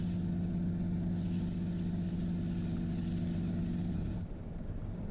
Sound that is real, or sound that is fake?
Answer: real